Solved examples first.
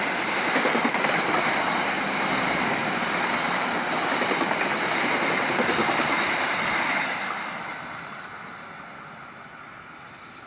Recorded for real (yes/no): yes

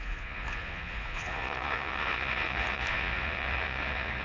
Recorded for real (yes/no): no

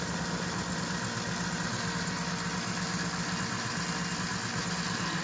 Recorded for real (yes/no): yes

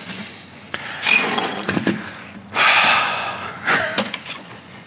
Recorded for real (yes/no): no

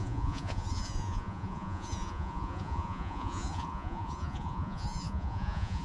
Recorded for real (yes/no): no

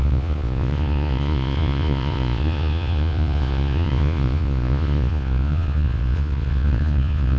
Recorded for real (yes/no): no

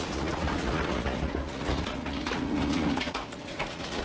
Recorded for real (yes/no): no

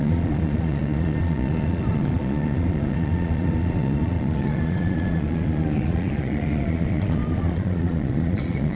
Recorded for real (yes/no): no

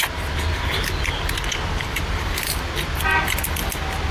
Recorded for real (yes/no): yes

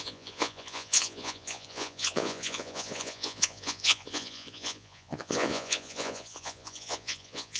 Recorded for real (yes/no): no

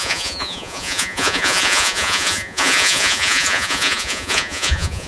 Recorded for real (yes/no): no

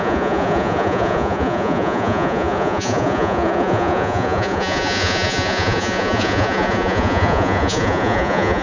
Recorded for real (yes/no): no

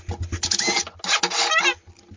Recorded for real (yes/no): yes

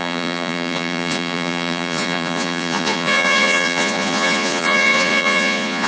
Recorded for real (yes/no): no